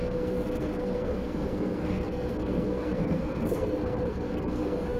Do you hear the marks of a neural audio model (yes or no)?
yes